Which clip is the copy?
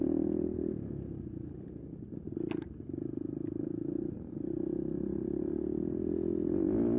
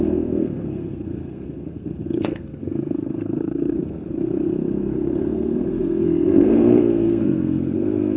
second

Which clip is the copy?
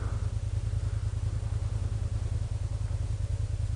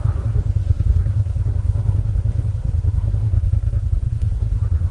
second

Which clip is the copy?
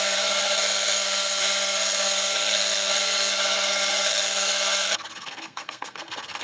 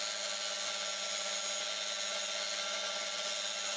first